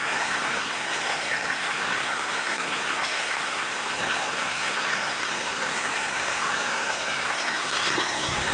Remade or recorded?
remade